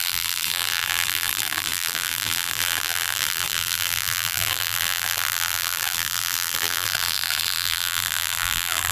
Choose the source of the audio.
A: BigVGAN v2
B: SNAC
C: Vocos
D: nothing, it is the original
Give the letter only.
A